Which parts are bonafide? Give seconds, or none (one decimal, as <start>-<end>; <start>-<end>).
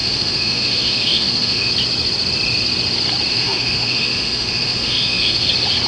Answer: 1.7-3.3; 5.5-5.9